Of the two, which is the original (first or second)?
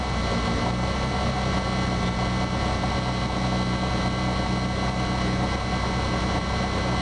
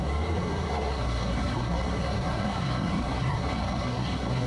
first